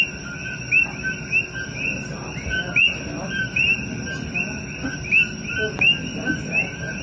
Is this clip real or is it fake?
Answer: real